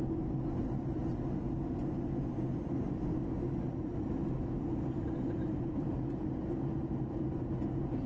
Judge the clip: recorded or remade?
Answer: recorded